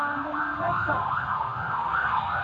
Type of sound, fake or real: fake